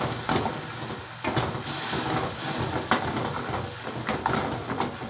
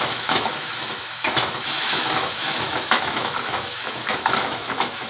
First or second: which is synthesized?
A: second